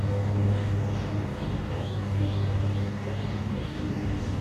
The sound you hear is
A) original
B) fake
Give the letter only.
B